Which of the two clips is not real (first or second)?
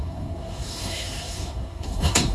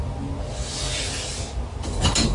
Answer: first